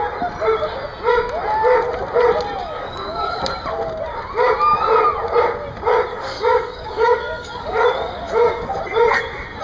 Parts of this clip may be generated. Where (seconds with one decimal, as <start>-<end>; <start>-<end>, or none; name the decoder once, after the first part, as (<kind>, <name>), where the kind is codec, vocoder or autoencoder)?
2.6-3.4 (codec, DAC); 6.1-8.8